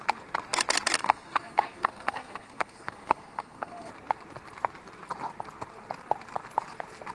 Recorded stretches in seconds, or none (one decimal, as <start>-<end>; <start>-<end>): 0.0-1.0; 3.9-7.1